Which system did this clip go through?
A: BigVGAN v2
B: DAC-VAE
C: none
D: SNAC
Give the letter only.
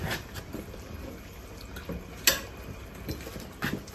C